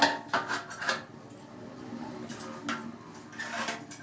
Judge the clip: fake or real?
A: real